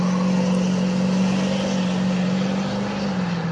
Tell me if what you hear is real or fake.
real